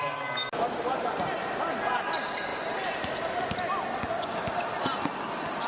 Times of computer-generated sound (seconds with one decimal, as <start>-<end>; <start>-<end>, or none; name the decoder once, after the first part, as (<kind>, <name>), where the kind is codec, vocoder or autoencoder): none